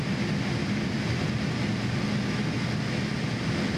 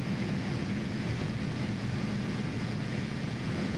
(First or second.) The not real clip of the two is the second